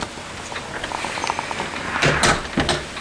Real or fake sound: real